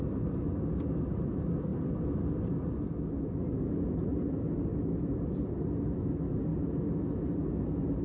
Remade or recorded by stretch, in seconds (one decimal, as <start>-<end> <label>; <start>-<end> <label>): 0.0-8.0 recorded